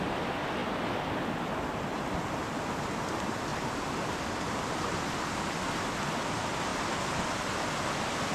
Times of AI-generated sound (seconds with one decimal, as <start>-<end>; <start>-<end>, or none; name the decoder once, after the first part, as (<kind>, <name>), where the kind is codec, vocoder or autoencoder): none